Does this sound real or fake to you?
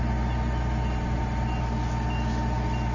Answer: real